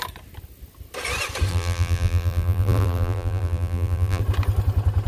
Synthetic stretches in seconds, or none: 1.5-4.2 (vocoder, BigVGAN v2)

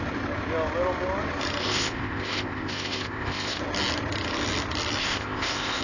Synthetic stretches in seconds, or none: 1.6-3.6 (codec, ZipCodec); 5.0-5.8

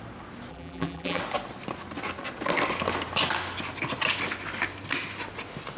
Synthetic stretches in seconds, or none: 0.5-1.2 (vocoder, BigVGAN v2)

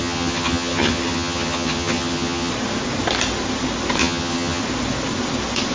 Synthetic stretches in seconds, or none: 0.0-2.5 (vocoder, HiFi-GAN); 4.0-4.6

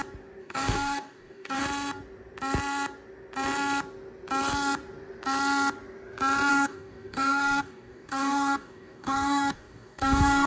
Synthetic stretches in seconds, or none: 0.4-1.6 (codec, DAC); 6.5-10.5

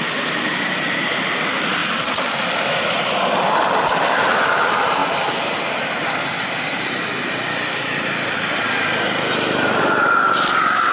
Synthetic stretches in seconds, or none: none

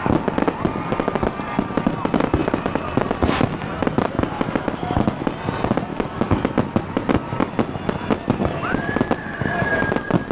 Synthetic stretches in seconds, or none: 5.9-6.4 (codec, DAC)

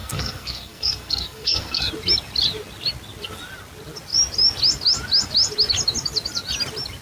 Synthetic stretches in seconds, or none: 0.0-1.9 (codec, SNAC)